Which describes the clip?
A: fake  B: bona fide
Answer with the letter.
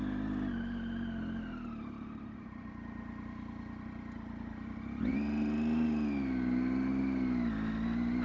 B